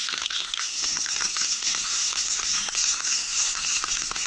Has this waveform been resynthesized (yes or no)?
yes